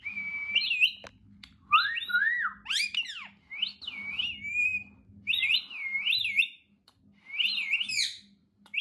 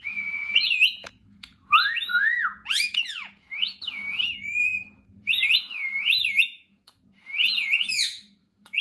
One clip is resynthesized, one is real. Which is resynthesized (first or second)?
second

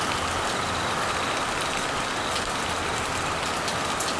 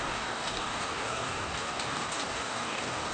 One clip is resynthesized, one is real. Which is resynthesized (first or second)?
second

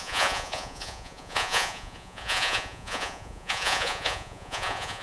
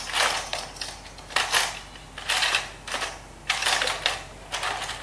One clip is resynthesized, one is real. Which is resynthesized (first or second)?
first